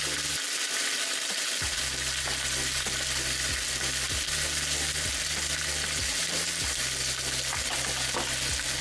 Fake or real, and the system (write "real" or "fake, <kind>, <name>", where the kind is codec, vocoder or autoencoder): real